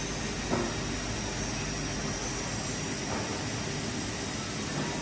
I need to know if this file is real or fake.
real